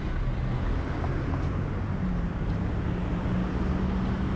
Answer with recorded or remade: recorded